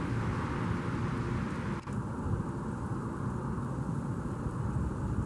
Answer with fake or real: real